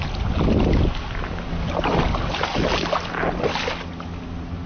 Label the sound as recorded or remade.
recorded